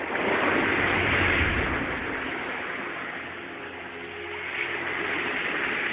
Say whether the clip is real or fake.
real